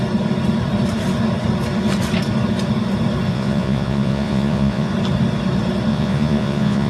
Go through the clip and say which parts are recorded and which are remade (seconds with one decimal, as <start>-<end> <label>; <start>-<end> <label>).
0.0-3.3 recorded; 3.3-4.9 remade; 4.9-5.9 recorded; 5.9-6.9 remade